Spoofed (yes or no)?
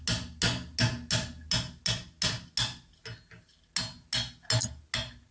no